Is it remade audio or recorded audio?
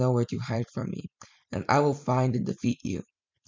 remade